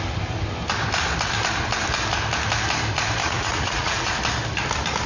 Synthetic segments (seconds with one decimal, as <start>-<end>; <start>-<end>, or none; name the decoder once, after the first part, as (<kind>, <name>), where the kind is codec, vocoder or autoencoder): 3.2-4.2 (vocoder, Vocos)